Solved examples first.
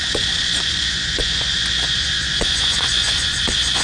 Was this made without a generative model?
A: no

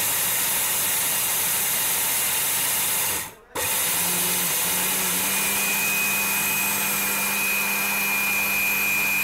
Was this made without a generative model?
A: yes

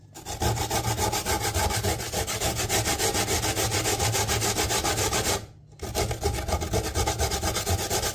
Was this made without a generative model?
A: yes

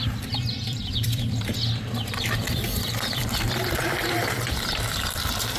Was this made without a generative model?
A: no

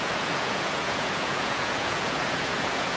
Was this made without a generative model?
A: no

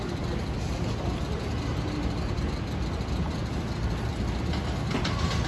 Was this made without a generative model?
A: yes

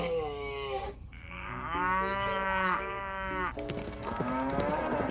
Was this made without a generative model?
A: no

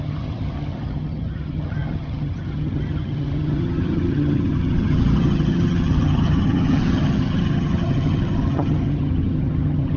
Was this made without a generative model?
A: no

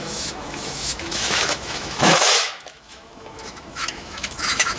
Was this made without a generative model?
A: no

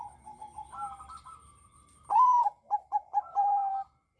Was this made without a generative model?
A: no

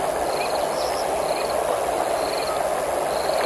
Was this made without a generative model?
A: yes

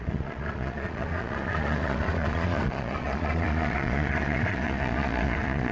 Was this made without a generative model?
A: no